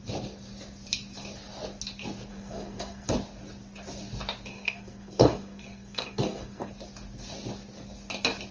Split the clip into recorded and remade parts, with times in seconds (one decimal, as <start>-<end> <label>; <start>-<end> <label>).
0.0-2.3 recorded; 2.3-3.1 remade; 3.1-4.5 recorded; 4.5-6.7 remade; 6.7-8.5 recorded